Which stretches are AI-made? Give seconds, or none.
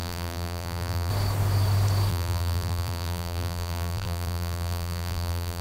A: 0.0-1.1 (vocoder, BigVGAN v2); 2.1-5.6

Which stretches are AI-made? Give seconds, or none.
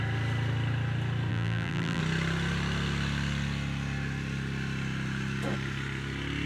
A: 1.3-2.0 (vocoder, BigVGAN v2)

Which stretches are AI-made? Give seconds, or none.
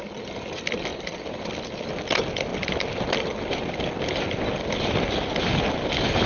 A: 0.9-1.4 (vocoder, BigVGAN v2)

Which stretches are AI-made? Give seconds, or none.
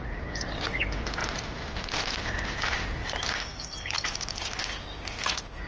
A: 1.2-4.6 (vocoder, BigVGAN v2)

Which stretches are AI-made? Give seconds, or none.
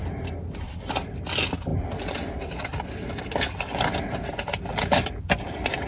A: 0.6-1.7 (vocoder, BigVGAN v2); 5.2-5.9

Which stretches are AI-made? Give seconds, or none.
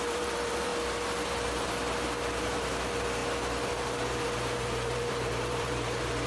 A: 0.0-0.7 (vocoder, BigVGAN v2); 2.4-3.2; 3.7-6.3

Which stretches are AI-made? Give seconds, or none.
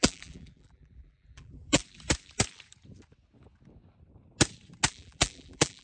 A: 0.0-1.8 (vocoder, BigVGAN v2); 4.9-5.8